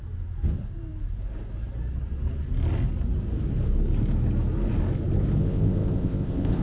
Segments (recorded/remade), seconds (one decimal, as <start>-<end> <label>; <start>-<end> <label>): 0.0-5.4 recorded; 5.4-6.6 remade

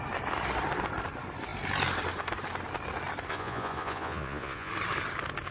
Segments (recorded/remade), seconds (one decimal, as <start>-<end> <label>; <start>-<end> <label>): 0.0-3.3 recorded; 3.3-4.7 remade; 4.7-5.5 recorded

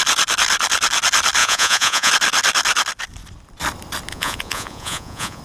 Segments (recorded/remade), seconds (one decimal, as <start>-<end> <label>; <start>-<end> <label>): 0.0-1.4 recorded; 1.4-2.1 remade; 2.1-4.1 recorded; 4.1-5.4 remade

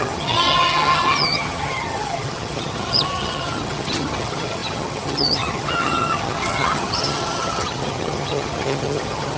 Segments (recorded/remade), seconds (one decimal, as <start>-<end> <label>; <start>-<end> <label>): 0.0-9.4 remade

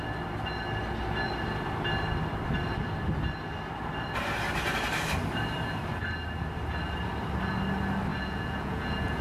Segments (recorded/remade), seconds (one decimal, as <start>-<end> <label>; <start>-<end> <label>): 0.0-8.1 recorded; 8.1-9.2 remade

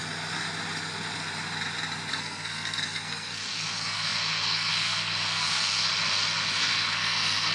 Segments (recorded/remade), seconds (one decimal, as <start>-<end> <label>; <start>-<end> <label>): 0.0-2.1 recorded; 2.1-5.9 remade; 5.9-6.6 recorded; 6.6-7.5 remade

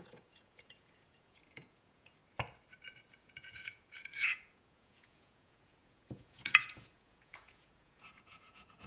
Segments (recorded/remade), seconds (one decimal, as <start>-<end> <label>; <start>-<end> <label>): 0.0-2.2 remade; 2.2-3.1 recorded; 3.1-8.9 remade

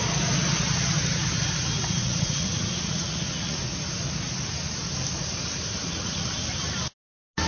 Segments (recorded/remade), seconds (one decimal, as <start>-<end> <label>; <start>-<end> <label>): 0.0-2.0 recorded; 2.0-3.6 remade; 3.6-5.8 recorded; 5.8-6.3 remade; 6.3-7.5 recorded